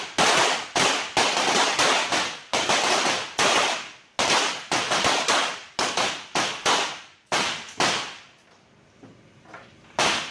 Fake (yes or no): no